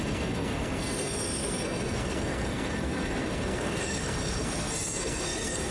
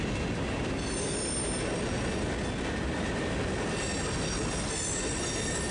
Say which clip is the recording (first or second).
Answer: second